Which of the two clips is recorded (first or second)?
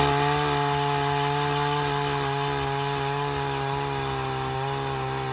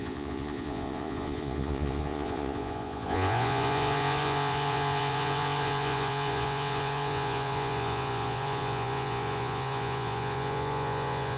first